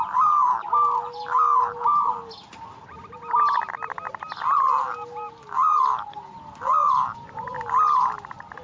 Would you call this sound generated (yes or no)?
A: no